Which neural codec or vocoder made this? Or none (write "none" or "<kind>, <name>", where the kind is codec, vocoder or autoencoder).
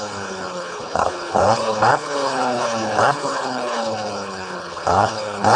codec, HILCodec